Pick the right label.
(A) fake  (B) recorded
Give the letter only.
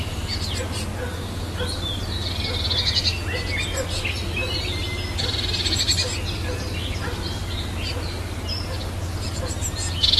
B